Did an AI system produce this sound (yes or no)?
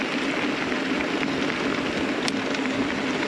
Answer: no